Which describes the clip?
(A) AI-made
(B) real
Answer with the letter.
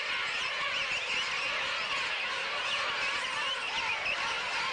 B